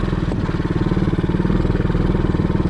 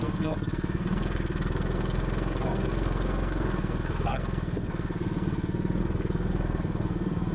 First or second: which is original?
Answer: first